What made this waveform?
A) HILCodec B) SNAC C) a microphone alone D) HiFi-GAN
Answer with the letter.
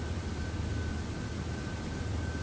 C